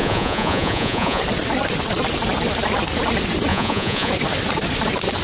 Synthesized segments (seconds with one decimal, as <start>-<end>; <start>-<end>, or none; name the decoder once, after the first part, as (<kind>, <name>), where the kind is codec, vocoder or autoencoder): 0.0-1.2 (vocoder, Vocos); 3.5-4.1